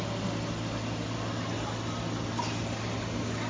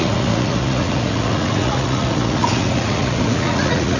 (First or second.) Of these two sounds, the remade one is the second